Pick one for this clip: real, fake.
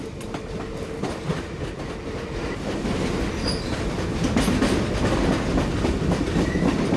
real